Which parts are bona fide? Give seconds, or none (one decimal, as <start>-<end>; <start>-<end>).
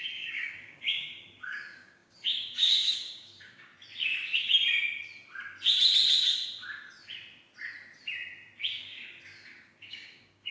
3.7-8.8